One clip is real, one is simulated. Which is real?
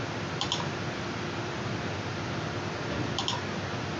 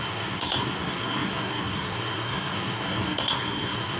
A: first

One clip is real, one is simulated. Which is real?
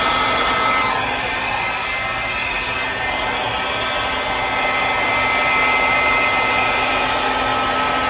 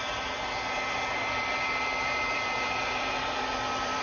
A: first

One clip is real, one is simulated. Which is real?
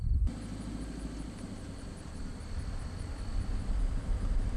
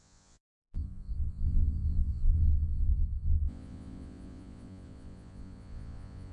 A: first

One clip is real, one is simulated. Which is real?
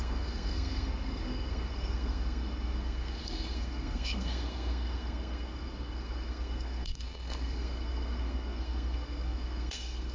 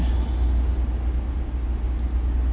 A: second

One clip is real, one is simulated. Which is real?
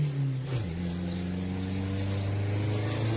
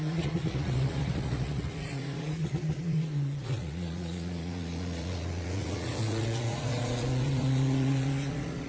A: first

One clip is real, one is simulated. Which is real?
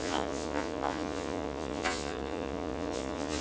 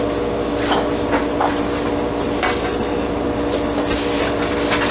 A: second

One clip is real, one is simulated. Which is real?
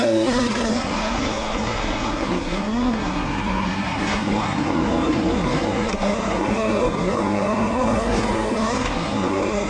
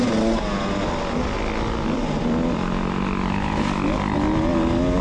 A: second